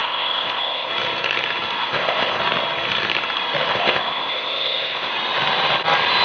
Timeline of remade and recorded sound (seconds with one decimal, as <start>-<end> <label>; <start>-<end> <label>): 0.0-0.9 remade; 0.9-1.8 recorded; 1.8-2.4 remade; 2.4-3.7 recorded; 3.7-5.1 remade; 5.1-6.2 recorded